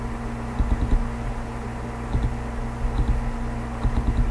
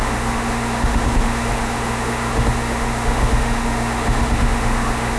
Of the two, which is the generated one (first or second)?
second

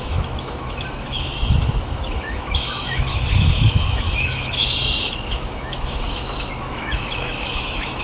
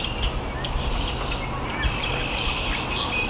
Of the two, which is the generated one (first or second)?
first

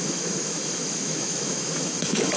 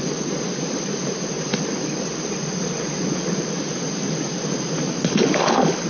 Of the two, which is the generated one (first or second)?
first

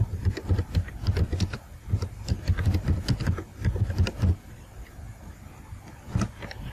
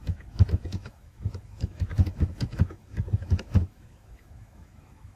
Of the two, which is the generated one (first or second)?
second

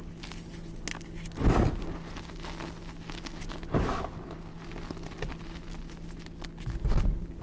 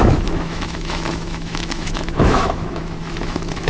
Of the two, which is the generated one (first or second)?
second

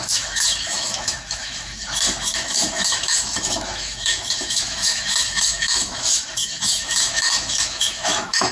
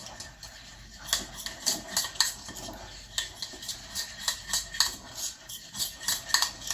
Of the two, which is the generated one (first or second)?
first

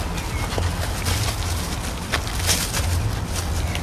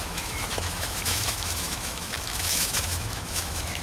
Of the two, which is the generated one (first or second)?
second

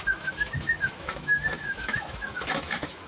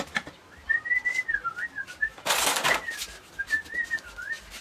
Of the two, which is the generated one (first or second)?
first